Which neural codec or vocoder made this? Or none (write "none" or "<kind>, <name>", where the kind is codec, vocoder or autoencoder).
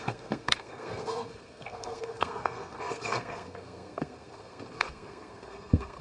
codec, SNAC